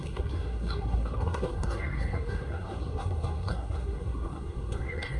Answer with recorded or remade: remade